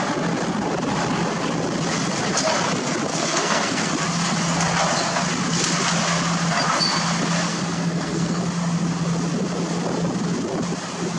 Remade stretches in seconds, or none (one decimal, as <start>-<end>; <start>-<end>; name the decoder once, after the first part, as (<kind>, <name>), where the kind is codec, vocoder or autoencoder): 3.1-3.9 (codec, SNAC); 7.5-8.4